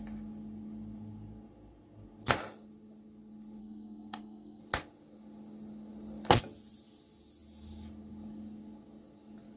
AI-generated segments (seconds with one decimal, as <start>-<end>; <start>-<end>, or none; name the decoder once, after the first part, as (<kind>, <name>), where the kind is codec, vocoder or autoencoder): 3.6-4.6 (codec, SNAC)